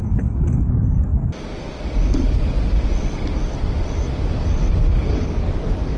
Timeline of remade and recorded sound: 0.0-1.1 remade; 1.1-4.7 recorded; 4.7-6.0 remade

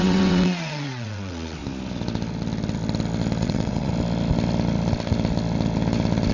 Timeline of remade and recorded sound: 0.0-1.6 remade; 1.6-3.4 recorded; 3.4-3.9 remade; 3.9-6.3 recorded

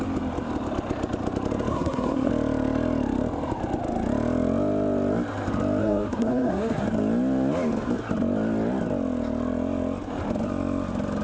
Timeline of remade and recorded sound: 0.0-1.7 recorded; 1.7-2.3 remade; 2.3-5.8 recorded; 5.8-6.8 remade; 6.8-11.2 recorded

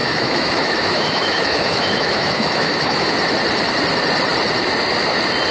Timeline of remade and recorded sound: 0.0-3.1 remade; 3.1-5.5 recorded